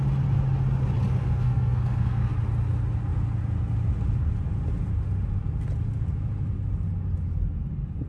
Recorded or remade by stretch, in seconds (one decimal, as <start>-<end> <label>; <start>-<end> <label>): 0.0-1.2 recorded; 1.2-2.3 remade; 2.3-8.1 recorded